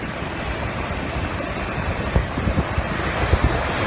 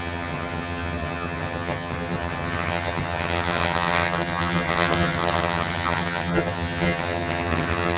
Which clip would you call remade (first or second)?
second